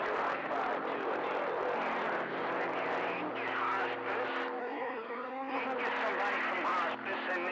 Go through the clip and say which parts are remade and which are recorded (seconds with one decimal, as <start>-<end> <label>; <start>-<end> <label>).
0.0-4.6 recorded; 4.6-5.6 remade; 5.6-7.5 recorded